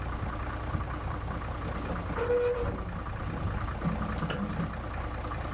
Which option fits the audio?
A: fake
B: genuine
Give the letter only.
B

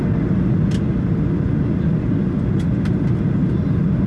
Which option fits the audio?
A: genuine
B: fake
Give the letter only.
A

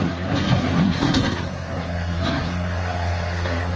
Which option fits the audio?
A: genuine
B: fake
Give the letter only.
B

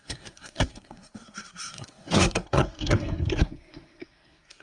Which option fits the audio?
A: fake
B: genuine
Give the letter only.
A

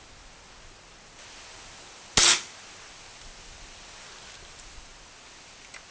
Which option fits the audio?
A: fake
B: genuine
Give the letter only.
B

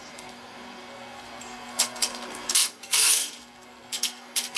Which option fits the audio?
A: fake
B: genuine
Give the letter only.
A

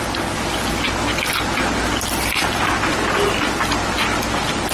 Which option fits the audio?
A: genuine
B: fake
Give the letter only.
A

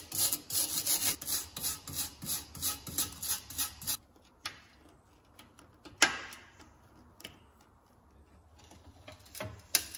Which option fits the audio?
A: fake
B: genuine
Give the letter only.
B